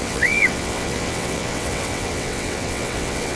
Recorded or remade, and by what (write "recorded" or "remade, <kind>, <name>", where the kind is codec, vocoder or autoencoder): remade, vocoder, WaveNeXt